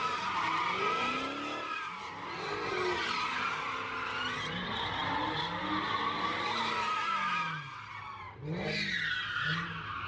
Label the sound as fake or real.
real